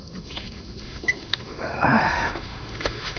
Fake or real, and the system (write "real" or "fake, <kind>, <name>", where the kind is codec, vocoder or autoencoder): fake, autoencoder, DAC-VAE